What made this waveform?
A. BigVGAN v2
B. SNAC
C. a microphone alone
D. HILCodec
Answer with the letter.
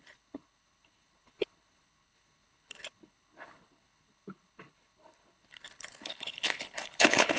D